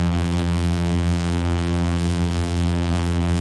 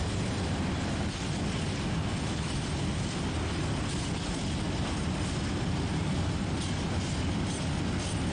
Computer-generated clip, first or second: first